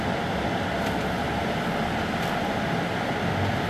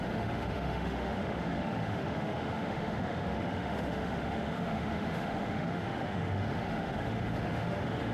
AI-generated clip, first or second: second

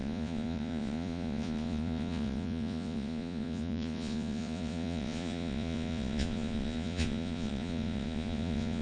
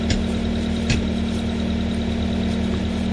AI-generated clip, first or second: first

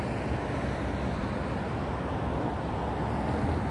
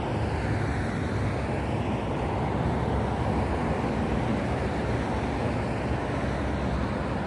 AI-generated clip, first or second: first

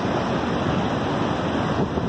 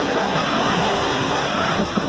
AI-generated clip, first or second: second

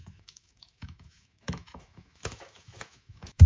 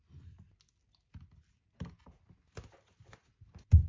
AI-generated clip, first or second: first